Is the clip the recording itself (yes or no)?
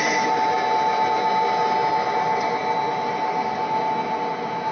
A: yes